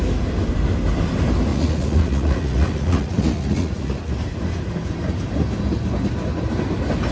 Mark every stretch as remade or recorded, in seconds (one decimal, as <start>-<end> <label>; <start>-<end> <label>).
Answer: 0.0-1.5 recorded; 1.5-4.1 remade; 4.1-7.1 recorded